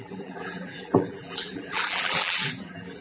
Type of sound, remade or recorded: remade